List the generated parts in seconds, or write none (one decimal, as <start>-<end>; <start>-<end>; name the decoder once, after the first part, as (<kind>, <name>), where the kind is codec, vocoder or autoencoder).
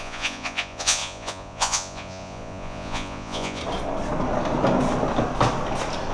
0.0-3.6 (vocoder, Vocos)